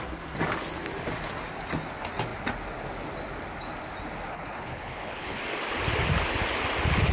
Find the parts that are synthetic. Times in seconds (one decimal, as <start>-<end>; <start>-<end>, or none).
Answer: 4.3-5.4